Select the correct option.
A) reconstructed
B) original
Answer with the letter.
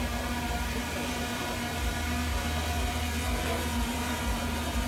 B